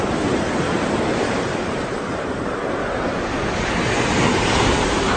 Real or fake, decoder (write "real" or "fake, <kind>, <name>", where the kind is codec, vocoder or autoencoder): fake, vocoder, BigVGAN v2